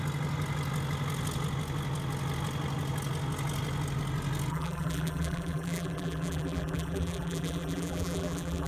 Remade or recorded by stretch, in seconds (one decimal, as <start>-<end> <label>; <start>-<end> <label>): 0.0-4.5 recorded; 4.5-8.7 remade